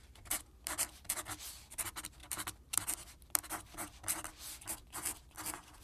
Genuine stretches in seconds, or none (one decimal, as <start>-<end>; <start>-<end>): 0.0-5.8